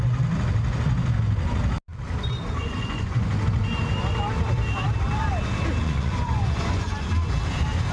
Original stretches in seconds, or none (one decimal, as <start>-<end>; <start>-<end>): 0.0-2.6; 3.3-5.8; 7.1-7.9